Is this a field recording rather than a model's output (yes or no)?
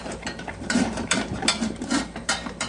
no